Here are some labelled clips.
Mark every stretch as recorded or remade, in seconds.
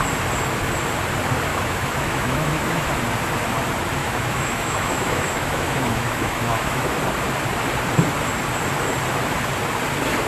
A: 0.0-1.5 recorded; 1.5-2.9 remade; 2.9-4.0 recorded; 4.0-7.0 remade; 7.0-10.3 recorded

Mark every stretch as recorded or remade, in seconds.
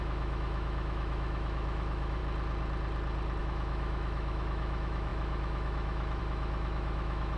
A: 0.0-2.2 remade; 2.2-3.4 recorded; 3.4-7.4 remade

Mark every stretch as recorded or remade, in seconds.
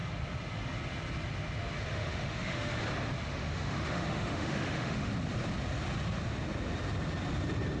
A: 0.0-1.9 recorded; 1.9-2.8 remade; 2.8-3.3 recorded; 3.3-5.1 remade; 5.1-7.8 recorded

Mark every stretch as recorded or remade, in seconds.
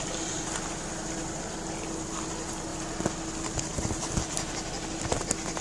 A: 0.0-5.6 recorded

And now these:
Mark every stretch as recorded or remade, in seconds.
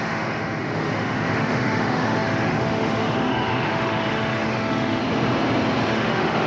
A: 0.0-5.0 remade; 5.0-5.9 recorded; 5.9-6.5 remade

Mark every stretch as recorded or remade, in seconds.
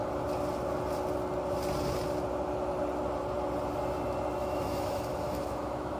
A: 0.0-4.4 recorded; 4.4-6.0 remade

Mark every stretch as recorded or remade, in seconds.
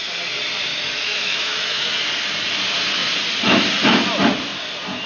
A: 0.0-0.7 recorded; 0.7-1.9 remade; 1.9-5.1 recorded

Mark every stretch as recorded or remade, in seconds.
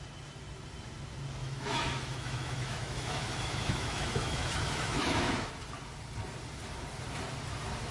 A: 0.0-1.4 recorded; 1.4-5.5 remade; 5.5-7.9 recorded